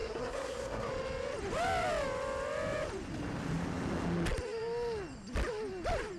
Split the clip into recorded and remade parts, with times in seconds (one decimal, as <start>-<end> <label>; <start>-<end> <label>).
0.0-0.9 remade; 0.9-6.2 recorded

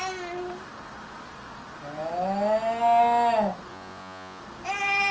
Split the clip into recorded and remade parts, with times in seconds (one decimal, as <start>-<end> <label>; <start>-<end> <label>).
0.0-3.7 recorded; 3.7-4.4 remade; 4.4-5.1 recorded

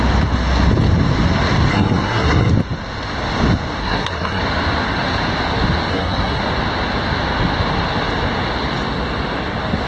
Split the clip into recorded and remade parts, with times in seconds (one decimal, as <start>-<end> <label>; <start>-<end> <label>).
0.0-1.7 recorded; 1.7-2.5 remade; 2.5-3.8 recorded; 3.8-4.4 remade; 4.4-5.9 recorded; 5.9-6.4 remade; 6.4-9.9 recorded

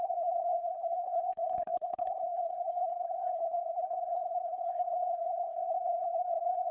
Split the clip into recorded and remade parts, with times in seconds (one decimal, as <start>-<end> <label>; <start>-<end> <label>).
0.0-6.7 remade